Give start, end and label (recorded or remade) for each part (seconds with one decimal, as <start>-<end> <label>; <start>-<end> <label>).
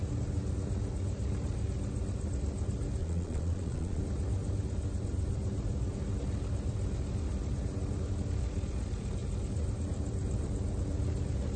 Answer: 0.0-3.0 recorded; 3.0-4.0 remade; 4.0-11.6 recorded